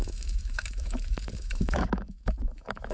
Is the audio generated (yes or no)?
yes